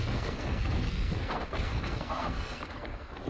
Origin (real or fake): fake